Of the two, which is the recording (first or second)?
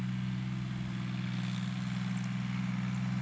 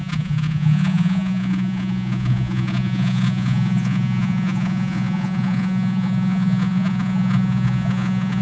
first